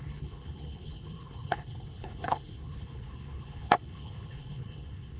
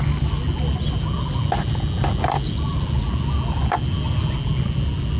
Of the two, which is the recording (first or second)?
second